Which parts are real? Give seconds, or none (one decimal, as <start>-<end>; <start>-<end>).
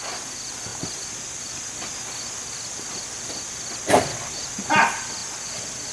0.0-5.9